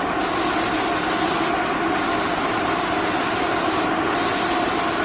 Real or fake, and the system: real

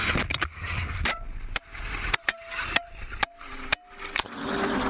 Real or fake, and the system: real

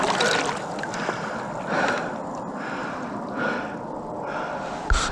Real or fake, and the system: fake, vocoder, BigVGAN v2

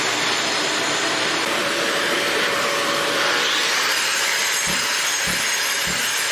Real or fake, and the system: fake, vocoder, BigVGAN v2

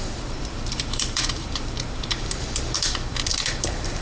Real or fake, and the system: fake, vocoder, BigVGAN v2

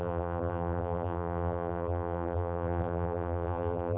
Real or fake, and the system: fake, vocoder, BigVGAN v2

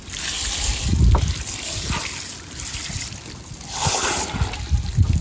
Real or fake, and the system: real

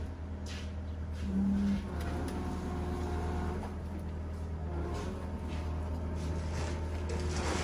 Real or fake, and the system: real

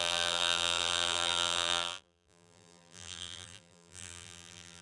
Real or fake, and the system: fake, vocoder, BigVGAN v2